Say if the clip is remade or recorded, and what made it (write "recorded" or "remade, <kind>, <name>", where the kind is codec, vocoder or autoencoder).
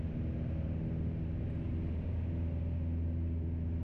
recorded